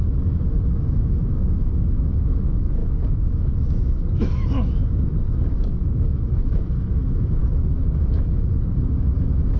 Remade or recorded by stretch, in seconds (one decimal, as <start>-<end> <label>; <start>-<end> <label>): 0.0-9.6 remade